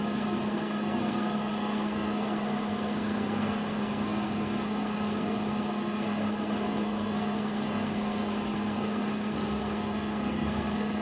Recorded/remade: remade